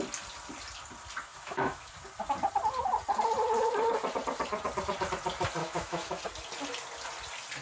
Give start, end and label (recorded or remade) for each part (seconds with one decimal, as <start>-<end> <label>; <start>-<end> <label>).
0.0-1.3 recorded; 1.3-1.9 remade; 1.9-5.6 recorded; 5.6-6.2 remade; 6.2-7.6 recorded